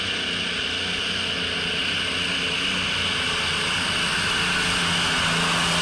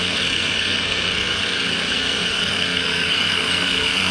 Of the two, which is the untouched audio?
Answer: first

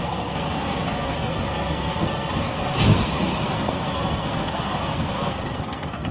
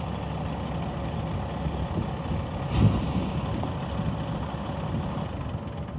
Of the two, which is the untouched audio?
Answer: second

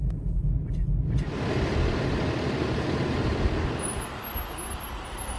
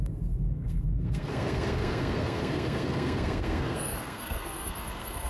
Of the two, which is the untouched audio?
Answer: first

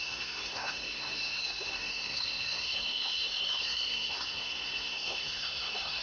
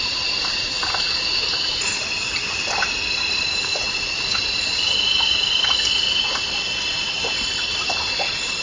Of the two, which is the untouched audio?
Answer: second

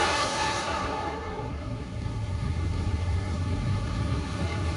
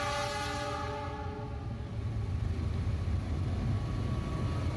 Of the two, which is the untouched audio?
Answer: second